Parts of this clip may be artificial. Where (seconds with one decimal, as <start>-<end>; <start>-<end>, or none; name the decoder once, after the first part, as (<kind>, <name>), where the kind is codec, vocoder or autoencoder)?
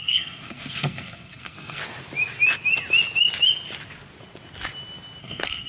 0.0-1.8 (codec, SNAC); 5.2-5.7